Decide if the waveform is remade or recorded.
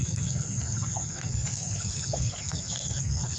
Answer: remade